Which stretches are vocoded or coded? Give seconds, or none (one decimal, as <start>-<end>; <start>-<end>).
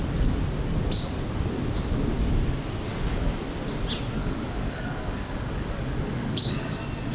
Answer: 4.2-6.6